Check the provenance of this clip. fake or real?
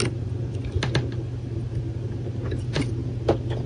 real